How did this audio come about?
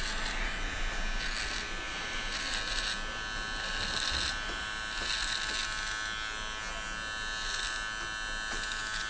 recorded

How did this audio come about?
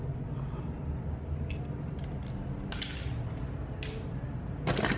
recorded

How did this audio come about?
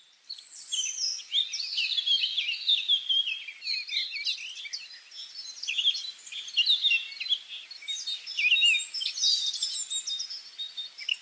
recorded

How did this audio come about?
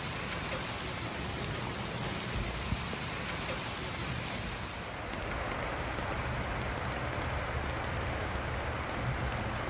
recorded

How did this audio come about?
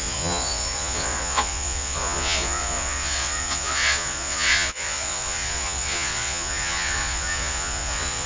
remade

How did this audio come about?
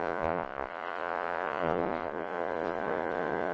remade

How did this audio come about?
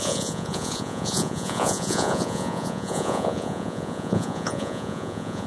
remade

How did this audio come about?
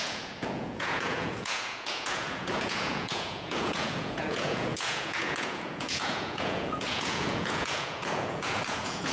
remade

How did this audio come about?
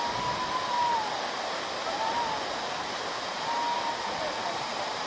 recorded